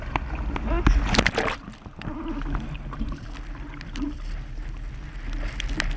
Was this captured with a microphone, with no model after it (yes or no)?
yes